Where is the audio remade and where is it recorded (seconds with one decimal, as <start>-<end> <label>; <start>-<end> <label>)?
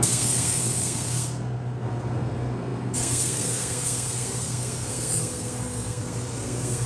0.0-6.9 remade